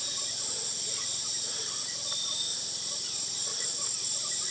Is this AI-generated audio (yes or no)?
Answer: yes